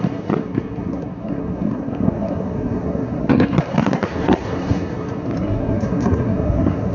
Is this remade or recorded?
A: remade